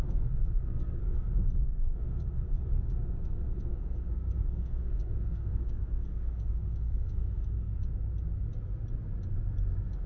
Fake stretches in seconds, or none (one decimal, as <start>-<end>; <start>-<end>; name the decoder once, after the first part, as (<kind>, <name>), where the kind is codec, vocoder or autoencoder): 0.0-7.7 (codec, SNAC)